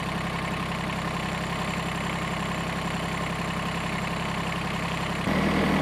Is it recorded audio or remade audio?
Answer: remade